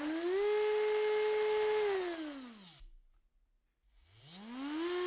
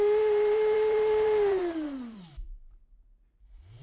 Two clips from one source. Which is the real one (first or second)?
first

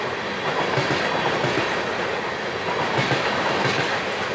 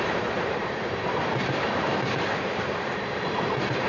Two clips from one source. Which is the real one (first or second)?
first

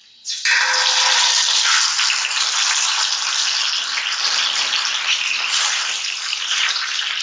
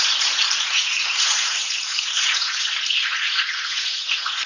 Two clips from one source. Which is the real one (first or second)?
first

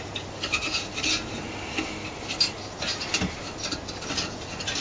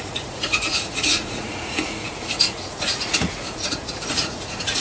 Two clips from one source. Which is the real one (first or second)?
first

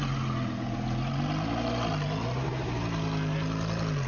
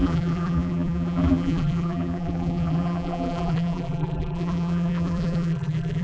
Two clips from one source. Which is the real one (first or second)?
first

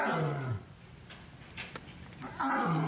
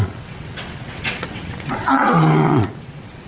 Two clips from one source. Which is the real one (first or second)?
first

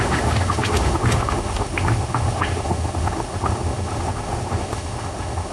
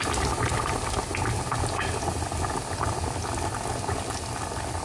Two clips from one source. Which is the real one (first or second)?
second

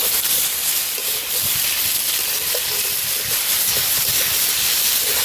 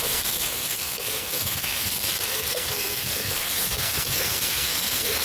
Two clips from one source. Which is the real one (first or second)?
first